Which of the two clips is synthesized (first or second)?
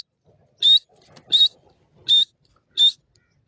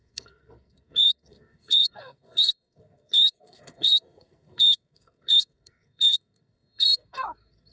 second